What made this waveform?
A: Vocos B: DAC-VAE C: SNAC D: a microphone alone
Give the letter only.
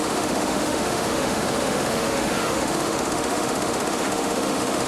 B